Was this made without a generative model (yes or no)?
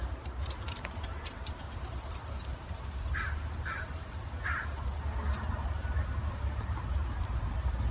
yes